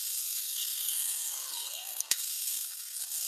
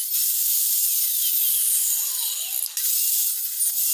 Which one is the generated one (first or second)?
first